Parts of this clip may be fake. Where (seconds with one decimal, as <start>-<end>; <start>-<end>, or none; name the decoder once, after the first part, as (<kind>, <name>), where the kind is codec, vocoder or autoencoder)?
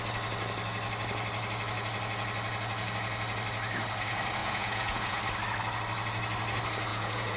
4.4-5.2 (vocoder, Vocos); 6.9-7.4